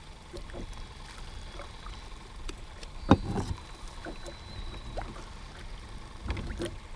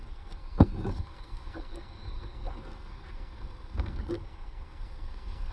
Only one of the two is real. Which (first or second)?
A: first